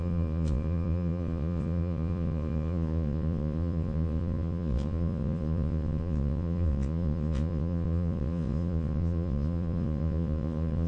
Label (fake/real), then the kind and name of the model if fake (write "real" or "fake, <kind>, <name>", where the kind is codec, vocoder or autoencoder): fake, vocoder, Vocos